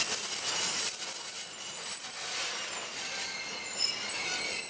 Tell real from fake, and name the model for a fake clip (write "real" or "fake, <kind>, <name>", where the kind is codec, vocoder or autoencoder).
real